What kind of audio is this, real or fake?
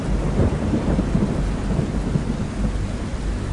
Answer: real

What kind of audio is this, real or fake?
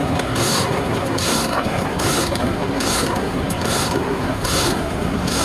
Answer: fake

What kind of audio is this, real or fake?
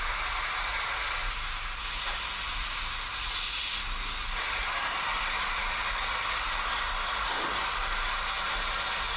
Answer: real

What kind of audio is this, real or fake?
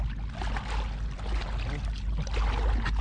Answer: real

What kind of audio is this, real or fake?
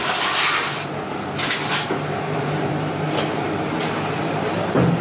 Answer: real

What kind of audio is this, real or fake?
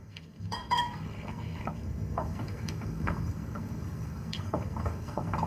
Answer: fake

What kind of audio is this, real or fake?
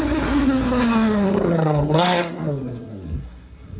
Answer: fake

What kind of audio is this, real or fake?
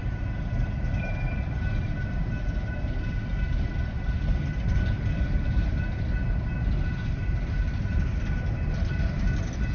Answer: real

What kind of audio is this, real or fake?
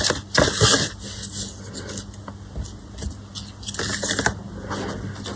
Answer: real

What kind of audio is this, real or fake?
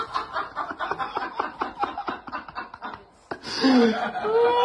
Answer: real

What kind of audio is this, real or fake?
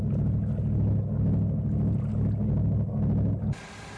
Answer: real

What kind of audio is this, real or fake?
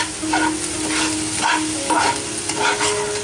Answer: real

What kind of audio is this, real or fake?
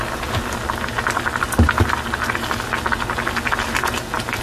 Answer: real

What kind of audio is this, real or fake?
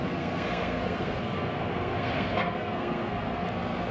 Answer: fake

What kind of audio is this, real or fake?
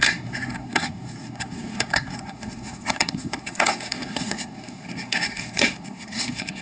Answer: fake